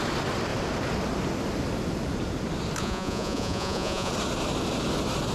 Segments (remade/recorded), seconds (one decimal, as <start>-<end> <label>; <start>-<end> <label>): 0.0-2.8 recorded; 2.8-4.1 remade; 4.1-5.3 recorded